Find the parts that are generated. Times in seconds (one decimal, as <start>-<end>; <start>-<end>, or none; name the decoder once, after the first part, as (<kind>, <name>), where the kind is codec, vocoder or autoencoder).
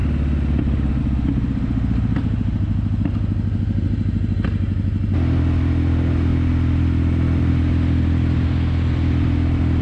none